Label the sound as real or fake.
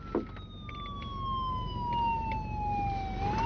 real